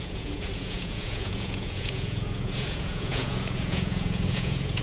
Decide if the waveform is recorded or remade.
remade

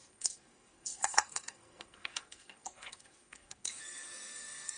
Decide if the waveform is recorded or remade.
remade